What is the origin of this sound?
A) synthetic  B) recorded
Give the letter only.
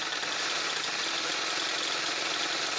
B